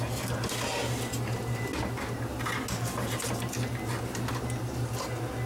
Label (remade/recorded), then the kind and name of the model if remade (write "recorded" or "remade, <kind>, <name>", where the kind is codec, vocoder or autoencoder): recorded